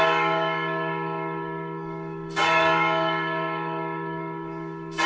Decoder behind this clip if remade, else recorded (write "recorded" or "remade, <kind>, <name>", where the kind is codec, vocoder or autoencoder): remade, codec, DAC